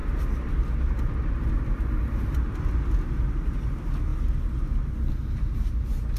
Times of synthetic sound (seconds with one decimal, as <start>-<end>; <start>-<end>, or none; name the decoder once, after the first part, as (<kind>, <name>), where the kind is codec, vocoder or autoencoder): none